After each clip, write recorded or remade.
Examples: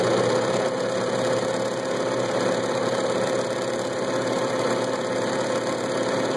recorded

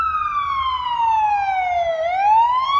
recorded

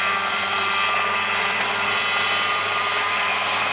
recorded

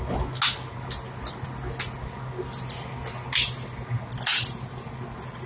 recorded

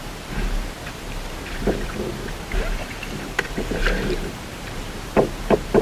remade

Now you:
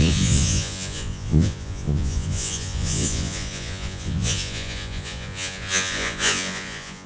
remade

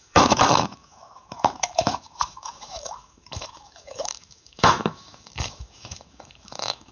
remade